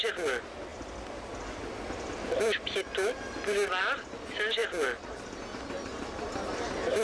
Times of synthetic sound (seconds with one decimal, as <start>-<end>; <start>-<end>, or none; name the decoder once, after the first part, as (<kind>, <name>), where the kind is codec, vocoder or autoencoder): none